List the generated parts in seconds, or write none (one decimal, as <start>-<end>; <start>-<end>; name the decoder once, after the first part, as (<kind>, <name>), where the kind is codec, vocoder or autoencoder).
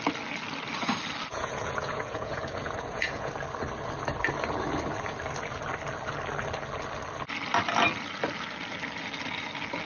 1.3-3.3 (vocoder, Vocos)